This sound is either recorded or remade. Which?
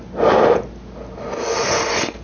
recorded